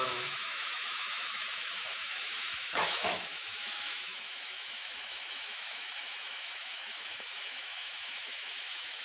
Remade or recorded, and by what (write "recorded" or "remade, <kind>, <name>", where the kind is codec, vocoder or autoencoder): remade, autoencoder, DAC-VAE